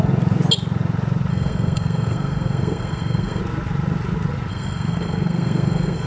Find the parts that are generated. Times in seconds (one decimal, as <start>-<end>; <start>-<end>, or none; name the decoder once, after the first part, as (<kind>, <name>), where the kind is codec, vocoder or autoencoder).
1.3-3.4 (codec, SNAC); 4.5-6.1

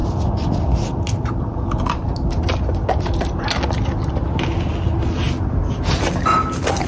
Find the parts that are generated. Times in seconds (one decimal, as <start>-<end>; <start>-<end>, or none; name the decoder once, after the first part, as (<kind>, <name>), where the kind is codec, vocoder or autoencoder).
none

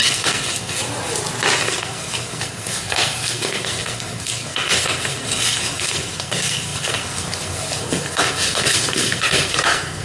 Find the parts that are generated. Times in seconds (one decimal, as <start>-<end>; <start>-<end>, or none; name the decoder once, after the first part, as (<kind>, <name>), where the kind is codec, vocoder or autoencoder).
0.0-0.8 (codec, SNAC); 1.6-10.0

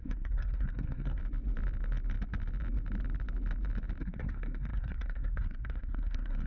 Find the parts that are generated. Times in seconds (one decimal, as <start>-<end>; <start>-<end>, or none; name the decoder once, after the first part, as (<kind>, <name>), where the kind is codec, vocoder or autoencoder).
0.0-1.2 (codec, SNAC); 4.0-6.5